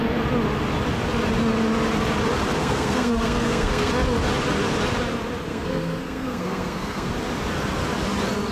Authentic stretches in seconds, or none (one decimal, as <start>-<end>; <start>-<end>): 0.0-2.6; 3.9-5.5; 7.1-8.5